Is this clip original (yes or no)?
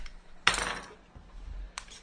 yes